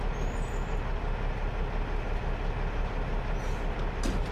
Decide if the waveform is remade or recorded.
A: recorded